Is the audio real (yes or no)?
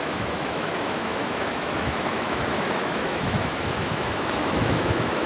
no